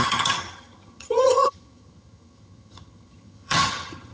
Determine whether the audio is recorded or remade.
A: remade